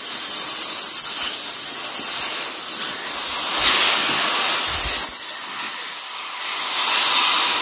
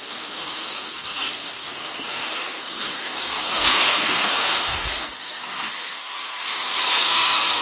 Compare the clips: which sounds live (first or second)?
first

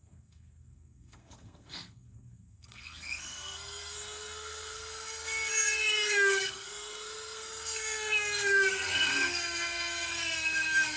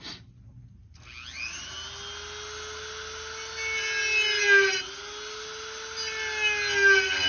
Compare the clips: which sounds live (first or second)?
second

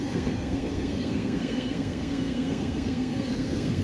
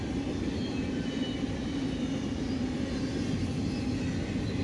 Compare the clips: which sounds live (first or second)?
second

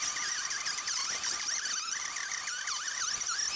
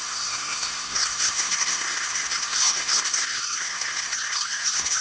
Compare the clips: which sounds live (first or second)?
first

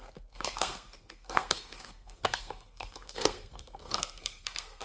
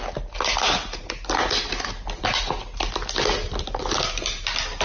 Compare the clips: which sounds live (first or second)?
second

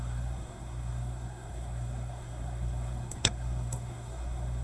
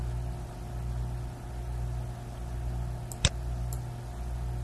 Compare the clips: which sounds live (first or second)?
second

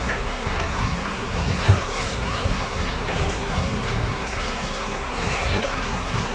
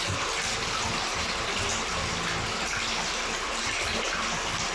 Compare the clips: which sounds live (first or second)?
second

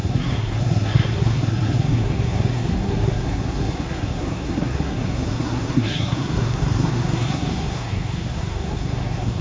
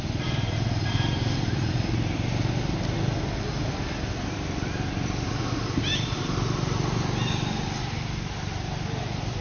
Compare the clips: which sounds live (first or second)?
second